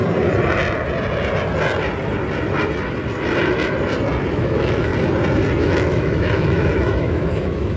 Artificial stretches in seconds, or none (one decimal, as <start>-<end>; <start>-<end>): 4.3-4.9; 5.6-7.8